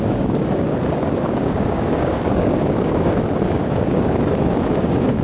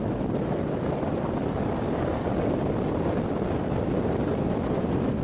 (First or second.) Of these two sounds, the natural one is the second